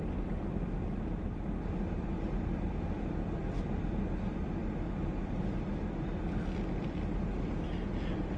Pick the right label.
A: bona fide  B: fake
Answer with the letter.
A